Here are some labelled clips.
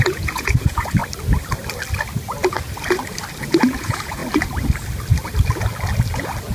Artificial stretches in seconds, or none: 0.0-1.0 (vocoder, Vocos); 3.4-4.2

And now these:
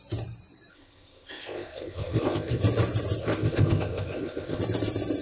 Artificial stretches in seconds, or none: 0.7-2.6 (codec, ZipCodec); 3.2-4.6

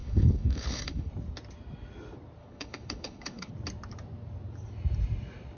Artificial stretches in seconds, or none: 0.0-1.1 (codec, HILCodec); 2.4-3.5

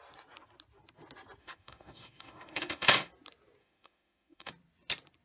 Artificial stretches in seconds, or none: 1.4-3.1 (autoencoder, DAC-VAE); 3.6-4.5